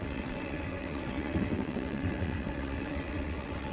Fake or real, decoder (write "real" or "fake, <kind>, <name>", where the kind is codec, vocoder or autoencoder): fake, vocoder, WaveNeXt